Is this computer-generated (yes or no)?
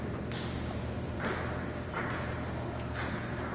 yes